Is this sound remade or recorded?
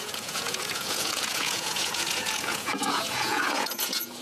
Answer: remade